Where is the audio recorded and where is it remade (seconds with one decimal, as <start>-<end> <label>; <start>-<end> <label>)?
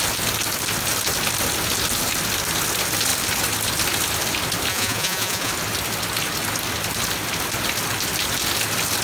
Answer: 0.0-4.7 recorded; 4.7-5.5 remade; 5.5-9.0 recorded